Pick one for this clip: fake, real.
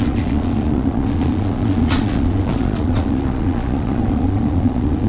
fake